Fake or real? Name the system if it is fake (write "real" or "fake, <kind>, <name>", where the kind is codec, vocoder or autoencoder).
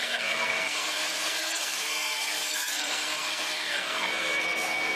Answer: fake, codec, SNAC